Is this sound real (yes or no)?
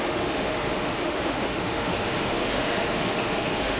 no